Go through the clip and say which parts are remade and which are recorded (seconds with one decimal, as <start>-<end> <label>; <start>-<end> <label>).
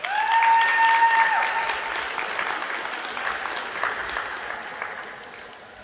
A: 0.0-5.8 recorded